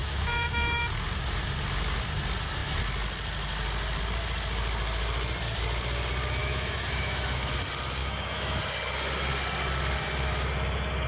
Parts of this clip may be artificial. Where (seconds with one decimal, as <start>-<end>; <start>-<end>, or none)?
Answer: 0.0-0.8; 6.4-7.5; 8.0-8.6